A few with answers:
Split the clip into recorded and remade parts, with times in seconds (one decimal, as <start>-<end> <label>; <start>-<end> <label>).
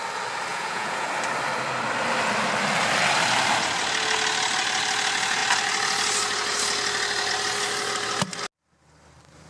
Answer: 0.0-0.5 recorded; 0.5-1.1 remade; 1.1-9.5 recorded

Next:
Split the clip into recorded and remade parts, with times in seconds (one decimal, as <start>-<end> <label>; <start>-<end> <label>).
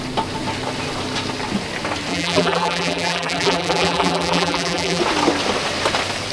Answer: 0.0-2.1 recorded; 2.1-5.0 remade; 5.0-6.3 recorded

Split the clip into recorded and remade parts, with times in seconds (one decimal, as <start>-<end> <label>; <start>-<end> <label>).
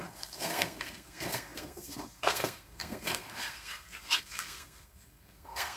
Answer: 0.0-5.8 remade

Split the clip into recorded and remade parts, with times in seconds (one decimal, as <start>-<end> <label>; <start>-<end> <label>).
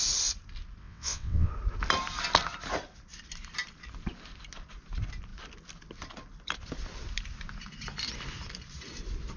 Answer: 0.0-0.8 recorded; 0.8-1.5 remade; 1.5-9.4 recorded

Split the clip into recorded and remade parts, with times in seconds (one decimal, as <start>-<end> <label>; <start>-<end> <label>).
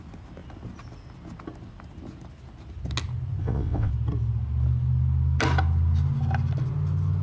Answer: 0.0-3.4 recorded; 3.4-3.9 remade; 3.9-7.2 recorded